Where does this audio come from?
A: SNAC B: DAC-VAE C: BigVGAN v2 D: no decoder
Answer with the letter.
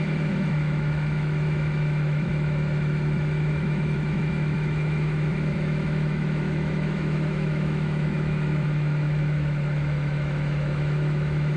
B